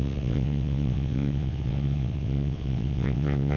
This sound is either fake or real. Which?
fake